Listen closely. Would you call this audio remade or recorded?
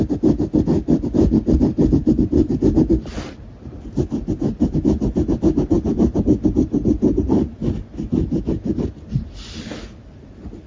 recorded